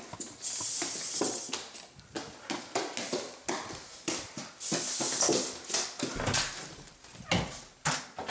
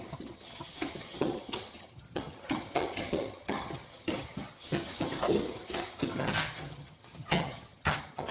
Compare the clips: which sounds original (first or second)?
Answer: first